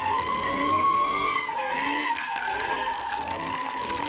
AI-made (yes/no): yes